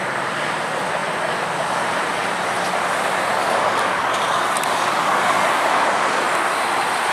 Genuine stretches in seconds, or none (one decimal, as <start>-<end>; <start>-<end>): 0.0-3.4; 6.2-7.1